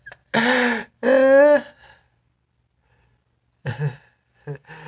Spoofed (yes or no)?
no